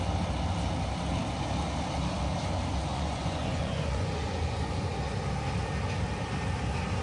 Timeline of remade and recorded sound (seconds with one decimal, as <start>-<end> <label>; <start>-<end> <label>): 0.0-2.9 recorded; 2.9-4.9 remade; 4.9-7.0 recorded